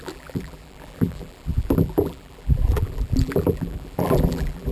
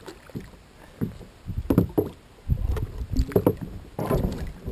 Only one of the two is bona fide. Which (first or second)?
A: second